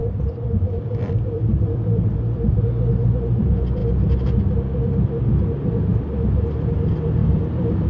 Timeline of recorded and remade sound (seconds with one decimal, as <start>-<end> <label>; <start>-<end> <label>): 0.0-2.9 remade; 2.9-7.2 recorded; 7.2-7.9 remade